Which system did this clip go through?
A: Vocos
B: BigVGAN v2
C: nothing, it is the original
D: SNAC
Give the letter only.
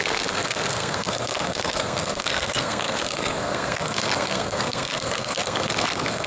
D